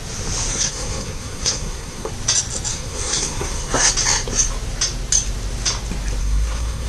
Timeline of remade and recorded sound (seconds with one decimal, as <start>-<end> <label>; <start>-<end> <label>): 0.0-0.5 recorded; 0.5-2.1 remade; 2.1-2.7 recorded; 2.7-3.9 remade; 3.9-6.2 recorded; 6.2-6.9 remade